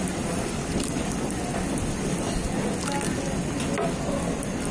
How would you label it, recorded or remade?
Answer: recorded